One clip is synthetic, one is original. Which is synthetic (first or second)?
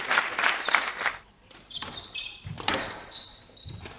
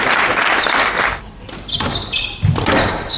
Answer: first